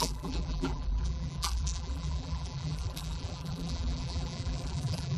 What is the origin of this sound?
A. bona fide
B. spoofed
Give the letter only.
B